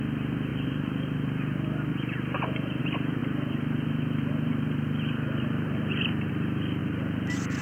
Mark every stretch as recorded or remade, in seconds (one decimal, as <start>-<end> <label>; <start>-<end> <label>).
0.0-0.5 recorded; 0.5-2.8 remade; 2.8-3.2 recorded; 3.2-6.3 remade; 6.3-6.8 recorded; 6.8-7.6 remade